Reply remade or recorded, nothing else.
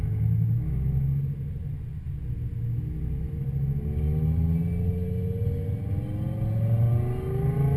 recorded